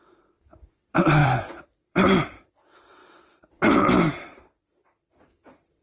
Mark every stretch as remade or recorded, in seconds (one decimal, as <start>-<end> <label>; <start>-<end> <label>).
0.0-3.0 remade; 3.0-3.7 recorded; 3.7-5.8 remade